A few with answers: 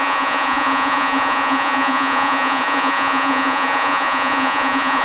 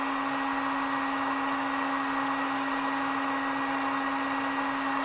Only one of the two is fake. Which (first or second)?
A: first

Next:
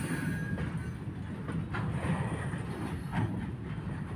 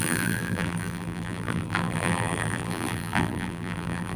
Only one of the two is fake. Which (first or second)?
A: second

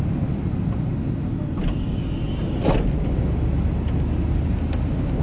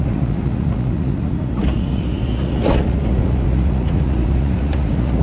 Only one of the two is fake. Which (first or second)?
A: second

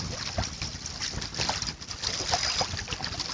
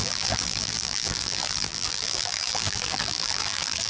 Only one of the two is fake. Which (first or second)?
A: second